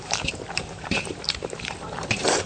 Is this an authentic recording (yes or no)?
no